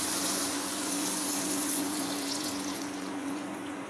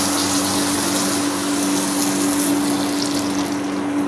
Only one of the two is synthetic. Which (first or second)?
first